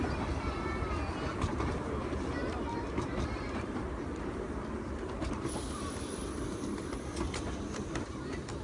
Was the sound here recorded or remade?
remade